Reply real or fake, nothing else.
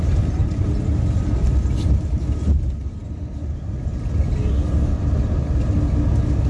real